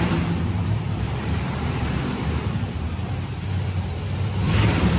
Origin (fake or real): fake